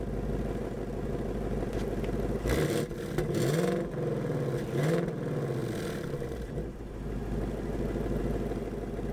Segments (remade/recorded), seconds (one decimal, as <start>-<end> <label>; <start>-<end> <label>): 0.0-9.1 recorded